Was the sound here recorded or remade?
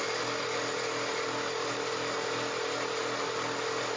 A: recorded